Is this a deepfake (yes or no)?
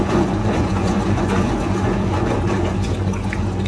yes